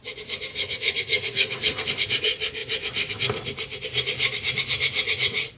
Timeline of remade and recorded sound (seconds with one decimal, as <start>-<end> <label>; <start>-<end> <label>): 0.0-0.5 recorded; 0.5-1.9 remade; 1.9-5.6 recorded